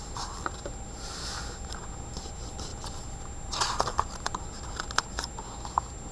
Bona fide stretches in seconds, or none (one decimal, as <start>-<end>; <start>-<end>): 0.0-6.1